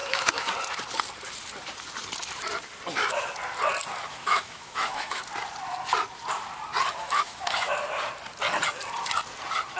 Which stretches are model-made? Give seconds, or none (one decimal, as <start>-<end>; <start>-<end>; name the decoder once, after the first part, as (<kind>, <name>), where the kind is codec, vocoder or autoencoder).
0.0-0.5 (autoencoder, DAC-VAE); 4.1-5.2; 7.0-7.7